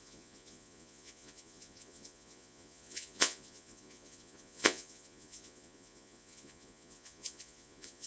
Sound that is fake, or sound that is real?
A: fake